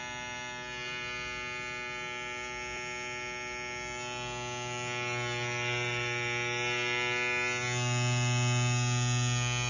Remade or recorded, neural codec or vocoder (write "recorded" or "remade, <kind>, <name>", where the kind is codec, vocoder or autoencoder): recorded